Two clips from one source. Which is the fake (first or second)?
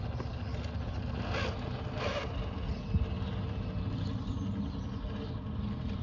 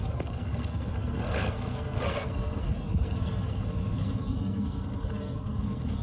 second